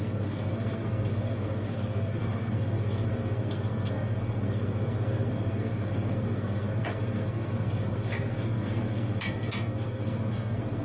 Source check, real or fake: fake